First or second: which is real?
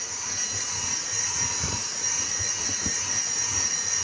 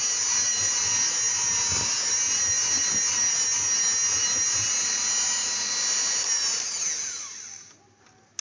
second